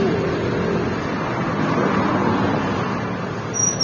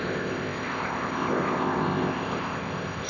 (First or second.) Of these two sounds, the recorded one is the first